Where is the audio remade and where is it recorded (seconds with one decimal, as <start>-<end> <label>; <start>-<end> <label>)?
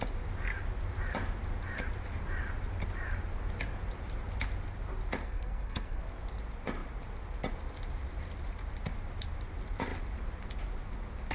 0.0-5.2 recorded; 5.2-6.0 remade; 6.0-11.3 recorded